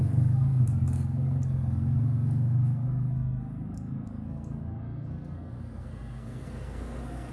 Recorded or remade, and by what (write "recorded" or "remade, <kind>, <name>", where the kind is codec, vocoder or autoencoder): remade, codec, SNAC